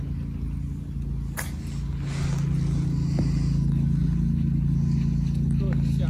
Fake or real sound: real